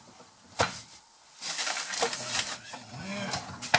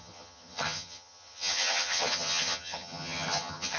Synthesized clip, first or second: second